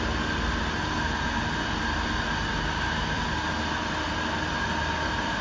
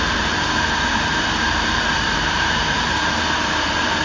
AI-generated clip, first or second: second